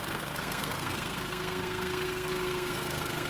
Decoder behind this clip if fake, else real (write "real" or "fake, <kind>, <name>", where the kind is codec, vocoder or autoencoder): fake, codec, SNAC